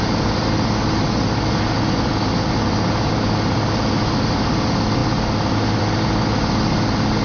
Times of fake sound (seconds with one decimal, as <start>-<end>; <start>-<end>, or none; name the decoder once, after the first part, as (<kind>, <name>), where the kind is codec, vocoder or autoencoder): none